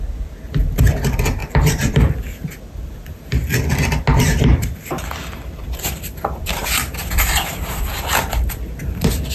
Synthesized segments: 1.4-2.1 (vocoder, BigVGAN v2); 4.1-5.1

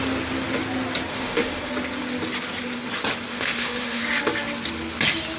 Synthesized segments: 1.1-1.7 (autoencoder, DAC-VAE); 3.3-4.0

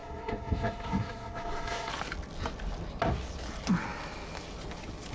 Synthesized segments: 0.0-1.9 (codec, SNAC)

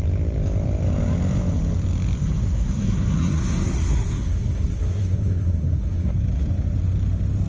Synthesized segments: 2.4-6.1 (codec, SNAC)

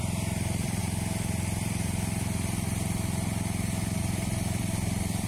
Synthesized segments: 0.0-0.8 (vocoder, BigVGAN v2); 4.0-5.3